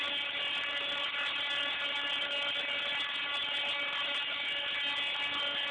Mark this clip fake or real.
real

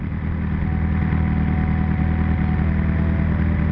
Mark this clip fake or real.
real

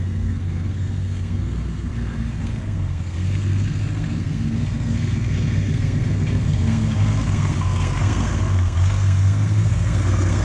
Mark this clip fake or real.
fake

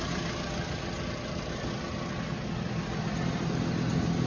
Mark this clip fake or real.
real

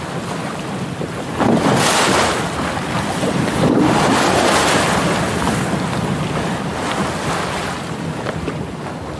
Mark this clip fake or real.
real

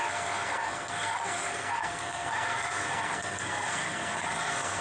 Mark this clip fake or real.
fake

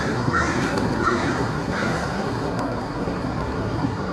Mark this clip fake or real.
fake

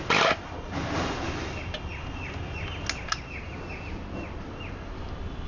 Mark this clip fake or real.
real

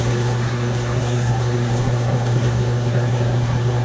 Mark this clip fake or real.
fake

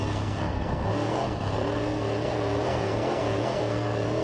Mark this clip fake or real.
fake